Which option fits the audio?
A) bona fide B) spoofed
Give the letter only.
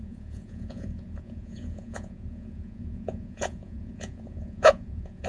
B